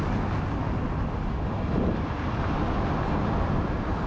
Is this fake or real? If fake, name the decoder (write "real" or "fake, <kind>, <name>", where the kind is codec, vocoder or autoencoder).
real